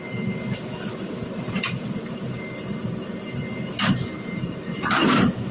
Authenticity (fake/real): real